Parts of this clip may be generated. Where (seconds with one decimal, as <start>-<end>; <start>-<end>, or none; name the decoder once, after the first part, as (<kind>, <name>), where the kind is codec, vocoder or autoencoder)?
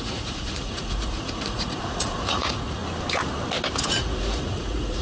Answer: 0.0-2.8 (vocoder, Vocos); 3.8-5.0